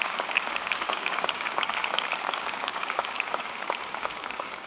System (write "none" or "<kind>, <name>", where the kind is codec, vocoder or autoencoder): codec, DAC